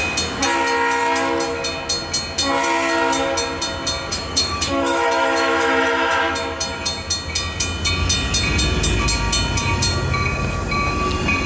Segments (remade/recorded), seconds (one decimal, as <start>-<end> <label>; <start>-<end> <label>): 0.0-4.1 recorded; 4.1-6.2 remade; 6.2-11.5 recorded